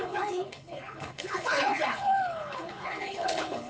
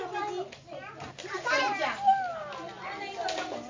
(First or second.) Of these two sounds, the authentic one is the second